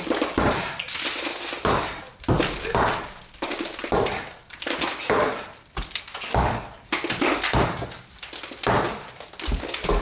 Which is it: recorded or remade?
recorded